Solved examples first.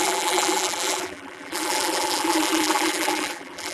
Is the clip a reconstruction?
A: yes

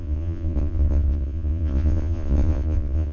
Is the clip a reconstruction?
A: yes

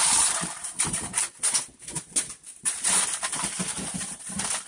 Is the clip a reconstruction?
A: yes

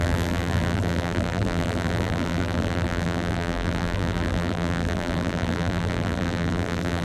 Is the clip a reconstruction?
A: yes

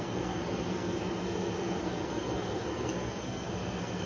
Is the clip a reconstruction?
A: yes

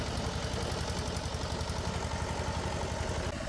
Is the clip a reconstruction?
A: no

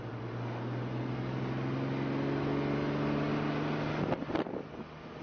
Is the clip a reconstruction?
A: no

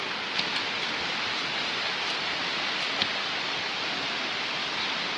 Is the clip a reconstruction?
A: no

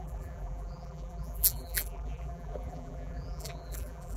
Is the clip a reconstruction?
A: yes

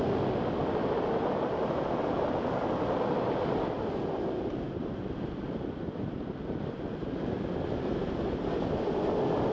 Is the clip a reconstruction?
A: no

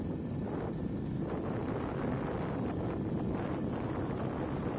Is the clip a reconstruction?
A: no